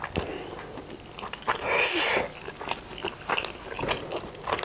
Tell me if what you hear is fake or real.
real